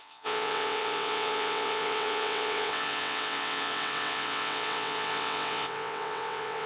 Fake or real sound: fake